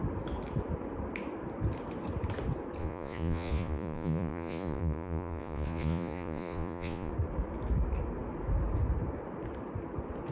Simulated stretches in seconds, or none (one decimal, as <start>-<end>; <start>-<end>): 2.8-7.1